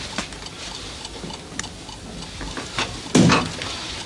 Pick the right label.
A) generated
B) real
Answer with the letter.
B